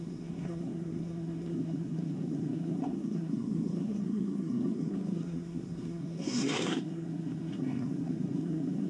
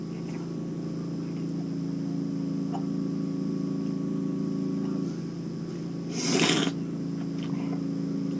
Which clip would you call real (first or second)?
second